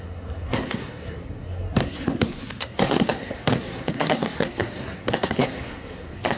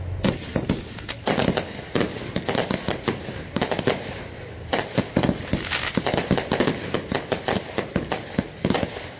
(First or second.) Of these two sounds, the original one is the second